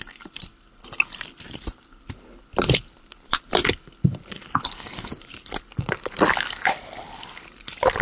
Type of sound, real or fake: fake